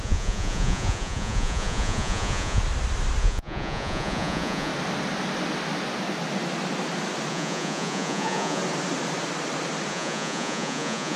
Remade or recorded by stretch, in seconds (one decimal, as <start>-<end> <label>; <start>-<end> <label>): 0.0-2.6 remade; 2.6-3.2 recorded; 3.2-4.7 remade; 4.7-7.3 recorded; 7.3-8.6 remade; 8.6-9.9 recorded; 9.9-11.2 remade